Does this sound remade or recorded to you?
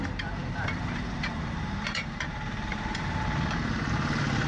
remade